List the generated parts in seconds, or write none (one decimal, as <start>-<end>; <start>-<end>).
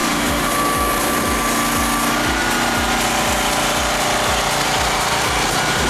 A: 0.0-0.5